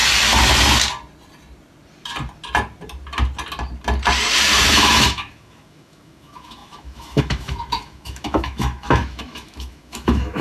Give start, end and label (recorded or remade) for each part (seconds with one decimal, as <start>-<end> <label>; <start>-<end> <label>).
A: 0.0-4.7 recorded; 4.7-10.4 remade